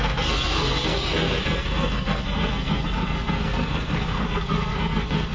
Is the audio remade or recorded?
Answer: remade